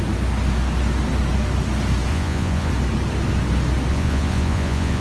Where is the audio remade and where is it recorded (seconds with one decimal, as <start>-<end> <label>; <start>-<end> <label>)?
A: 0.0-2.1 recorded; 2.1-2.7 remade; 2.7-3.9 recorded; 3.9-5.0 remade